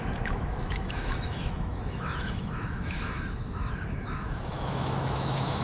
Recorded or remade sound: remade